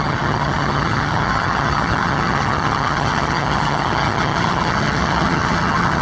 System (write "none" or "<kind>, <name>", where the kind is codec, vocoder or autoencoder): vocoder, HiFi-GAN